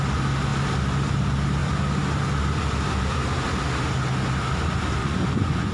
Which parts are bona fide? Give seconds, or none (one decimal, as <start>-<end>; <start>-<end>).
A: 0.0-5.0